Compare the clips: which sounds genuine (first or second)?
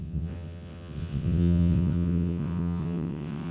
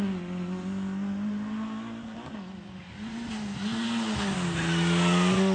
second